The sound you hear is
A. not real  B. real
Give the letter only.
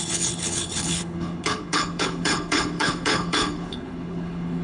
A